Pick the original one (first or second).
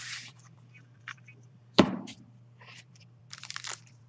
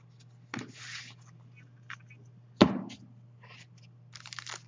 second